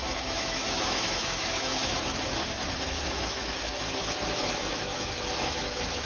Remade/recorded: remade